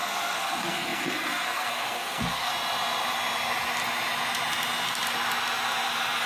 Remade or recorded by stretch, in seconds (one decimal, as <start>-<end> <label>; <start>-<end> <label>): 0.0-2.5 remade; 2.5-6.3 recorded